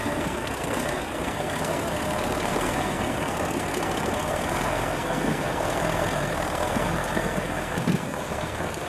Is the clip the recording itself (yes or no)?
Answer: no